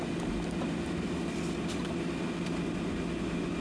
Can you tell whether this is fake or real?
real